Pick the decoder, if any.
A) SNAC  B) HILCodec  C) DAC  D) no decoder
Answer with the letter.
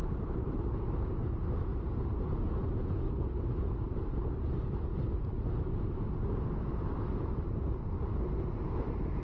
D